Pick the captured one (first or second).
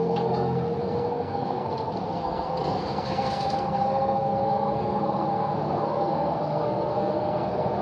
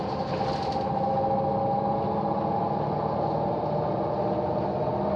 second